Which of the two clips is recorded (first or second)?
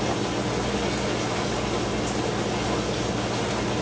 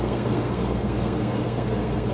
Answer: first